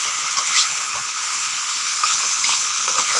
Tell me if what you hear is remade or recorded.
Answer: remade